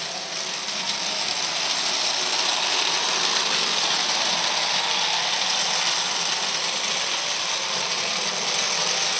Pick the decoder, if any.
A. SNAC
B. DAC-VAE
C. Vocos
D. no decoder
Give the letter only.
D